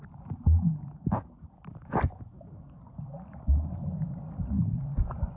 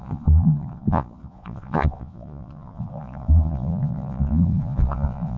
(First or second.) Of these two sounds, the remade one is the second